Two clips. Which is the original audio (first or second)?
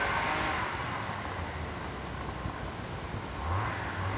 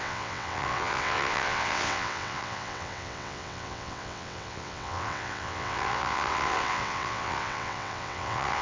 first